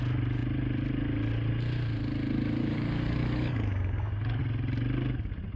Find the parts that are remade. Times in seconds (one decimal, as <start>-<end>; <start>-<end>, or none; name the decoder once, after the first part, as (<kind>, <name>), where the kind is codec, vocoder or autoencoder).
2.6-4.4 (codec, DAC)